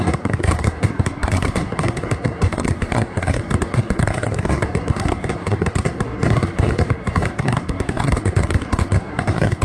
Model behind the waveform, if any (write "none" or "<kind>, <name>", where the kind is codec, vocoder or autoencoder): codec, SNAC